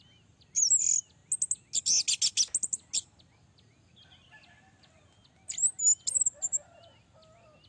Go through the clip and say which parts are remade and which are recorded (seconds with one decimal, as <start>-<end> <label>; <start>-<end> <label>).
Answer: 0.0-7.7 recorded